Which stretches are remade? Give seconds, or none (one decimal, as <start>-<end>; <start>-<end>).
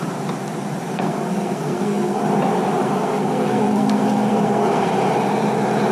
0.9-2.2; 2.8-4.9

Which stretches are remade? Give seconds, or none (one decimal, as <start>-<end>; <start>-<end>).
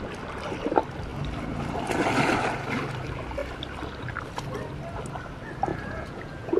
5.7-6.6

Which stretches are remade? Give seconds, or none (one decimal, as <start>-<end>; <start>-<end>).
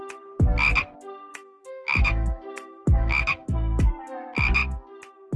1.3-3.9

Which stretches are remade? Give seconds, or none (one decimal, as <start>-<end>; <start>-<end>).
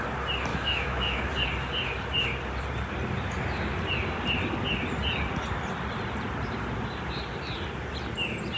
0.5-1.3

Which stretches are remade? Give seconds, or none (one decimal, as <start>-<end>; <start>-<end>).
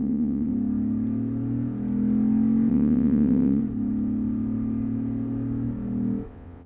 0.0-0.5; 2.7-3.6; 6.3-6.7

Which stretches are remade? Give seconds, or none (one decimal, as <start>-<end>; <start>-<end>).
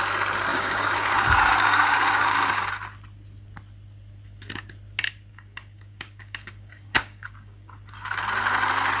0.5-2.7; 5.3-7.7